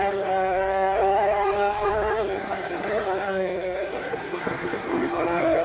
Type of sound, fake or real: fake